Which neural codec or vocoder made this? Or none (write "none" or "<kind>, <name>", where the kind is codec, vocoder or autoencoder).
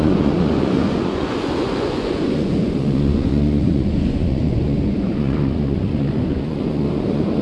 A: vocoder, Vocos